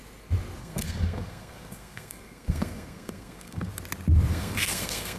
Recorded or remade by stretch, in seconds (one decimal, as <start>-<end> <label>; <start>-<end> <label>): 0.0-0.6 recorded; 0.6-3.7 remade; 3.7-4.3 recorded; 4.3-5.2 remade